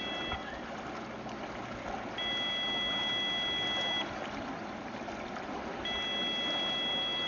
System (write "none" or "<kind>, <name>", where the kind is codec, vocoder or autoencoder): none